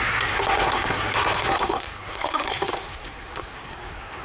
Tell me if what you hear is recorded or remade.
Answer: remade